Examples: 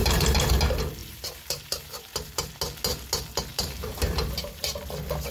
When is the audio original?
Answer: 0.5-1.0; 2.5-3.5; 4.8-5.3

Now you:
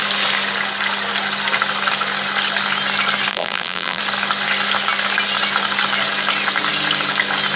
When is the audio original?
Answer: 0.0-3.3; 4.0-7.6